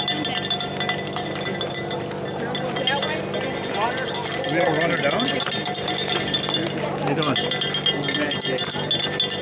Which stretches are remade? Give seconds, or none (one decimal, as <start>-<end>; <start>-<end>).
none